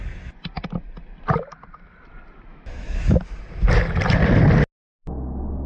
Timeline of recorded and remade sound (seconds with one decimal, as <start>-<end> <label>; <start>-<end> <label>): 0.0-2.5 recorded; 2.5-3.2 remade; 3.2-5.7 recorded